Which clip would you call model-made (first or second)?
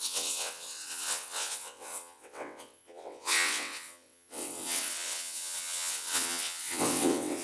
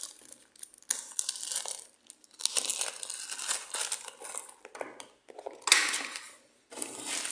first